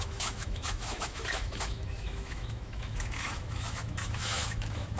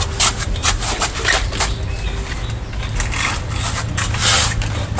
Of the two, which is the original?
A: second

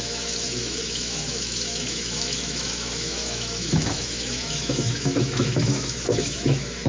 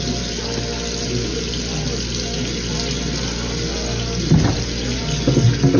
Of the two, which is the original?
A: second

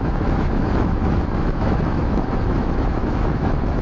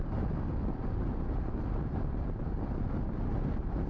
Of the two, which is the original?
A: second